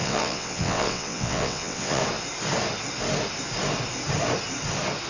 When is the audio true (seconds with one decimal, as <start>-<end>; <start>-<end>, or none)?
2.0-5.1